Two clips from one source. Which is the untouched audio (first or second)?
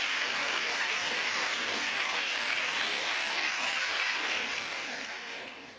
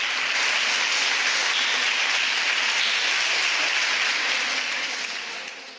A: second